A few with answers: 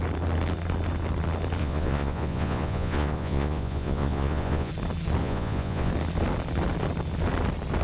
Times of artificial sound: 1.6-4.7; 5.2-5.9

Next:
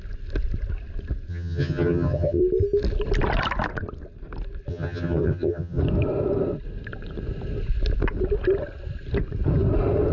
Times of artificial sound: 1.3-2.4; 4.7-5.8